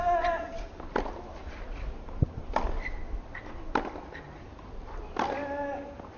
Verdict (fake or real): real